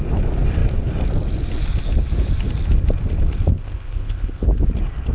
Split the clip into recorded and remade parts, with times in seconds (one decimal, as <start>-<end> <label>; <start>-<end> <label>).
0.0-3.5 recorded; 3.5-4.5 remade; 4.5-5.1 recorded